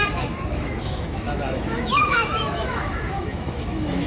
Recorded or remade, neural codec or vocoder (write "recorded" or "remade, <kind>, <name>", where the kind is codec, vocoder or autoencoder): remade, autoencoder, DAC-VAE